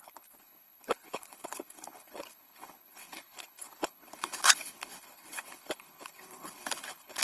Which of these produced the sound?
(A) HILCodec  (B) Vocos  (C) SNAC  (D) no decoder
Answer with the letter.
A